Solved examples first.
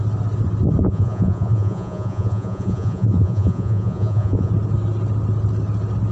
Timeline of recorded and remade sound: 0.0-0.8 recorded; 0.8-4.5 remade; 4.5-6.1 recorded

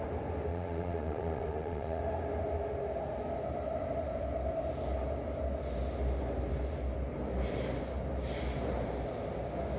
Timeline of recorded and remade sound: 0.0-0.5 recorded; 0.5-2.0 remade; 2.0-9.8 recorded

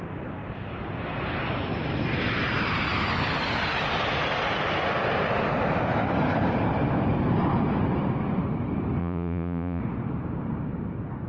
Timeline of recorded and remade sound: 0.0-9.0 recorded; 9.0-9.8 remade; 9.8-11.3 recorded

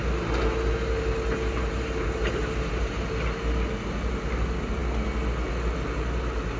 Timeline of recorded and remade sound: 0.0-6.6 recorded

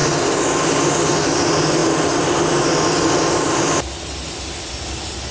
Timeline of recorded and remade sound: 0.0-5.3 recorded